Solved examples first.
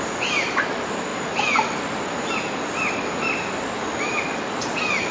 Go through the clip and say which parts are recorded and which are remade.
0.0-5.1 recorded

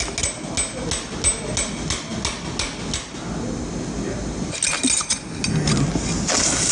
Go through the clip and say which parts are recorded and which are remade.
0.0-6.7 recorded

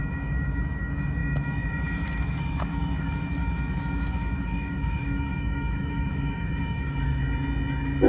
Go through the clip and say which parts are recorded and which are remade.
0.0-7.2 remade; 7.2-8.1 recorded

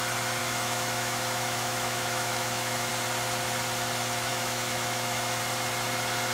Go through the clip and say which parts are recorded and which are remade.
0.0-0.4 recorded; 0.4-2.9 remade; 2.9-4.3 recorded; 4.3-5.4 remade; 5.4-6.3 recorded

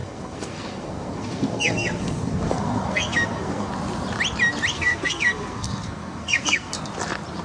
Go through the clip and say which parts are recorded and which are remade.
0.0-3.7 remade; 3.7-4.7 recorded; 4.7-6.7 remade; 6.7-7.4 recorded